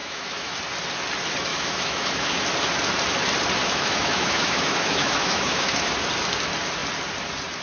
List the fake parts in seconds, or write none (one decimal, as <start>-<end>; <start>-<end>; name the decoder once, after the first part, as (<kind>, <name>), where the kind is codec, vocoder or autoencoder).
0.0-0.6 (autoencoder, DAC-VAE); 1.5-2.4; 3.6-5.9